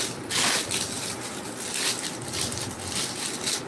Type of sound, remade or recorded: recorded